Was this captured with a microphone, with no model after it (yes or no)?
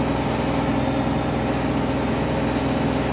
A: yes